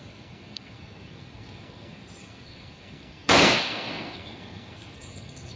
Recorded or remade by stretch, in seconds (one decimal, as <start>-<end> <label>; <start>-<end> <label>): 0.0-5.6 remade